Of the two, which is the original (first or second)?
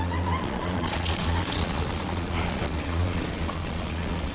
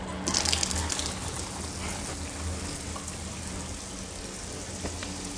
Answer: second